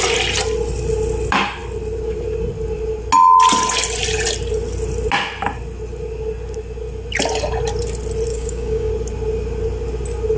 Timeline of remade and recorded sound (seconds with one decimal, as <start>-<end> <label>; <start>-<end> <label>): 0.0-8.3 recorded; 8.3-8.9 remade; 8.9-10.4 recorded